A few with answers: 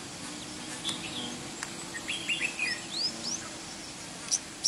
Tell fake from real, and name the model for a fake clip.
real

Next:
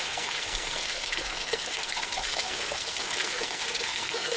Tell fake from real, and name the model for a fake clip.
fake, codec, SNAC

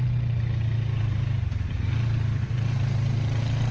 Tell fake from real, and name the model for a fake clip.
real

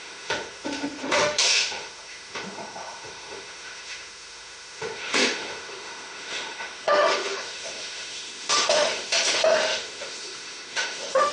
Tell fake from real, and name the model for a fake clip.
fake, autoencoder, DAC-VAE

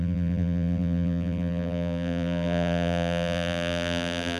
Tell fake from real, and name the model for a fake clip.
fake, vocoder, BigVGAN v2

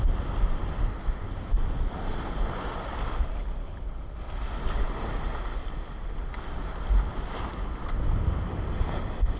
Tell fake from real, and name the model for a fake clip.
real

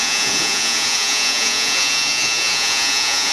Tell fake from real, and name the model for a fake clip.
fake, vocoder, Vocos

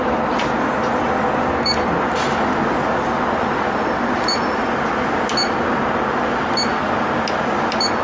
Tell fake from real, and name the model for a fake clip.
real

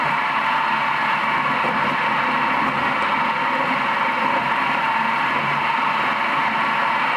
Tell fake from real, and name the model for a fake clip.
real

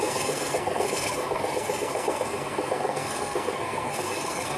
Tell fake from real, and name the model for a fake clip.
fake, codec, SNAC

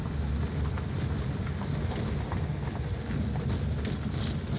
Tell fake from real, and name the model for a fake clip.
real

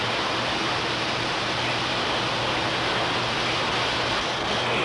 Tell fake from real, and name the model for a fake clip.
real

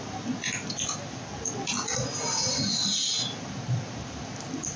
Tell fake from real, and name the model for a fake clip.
real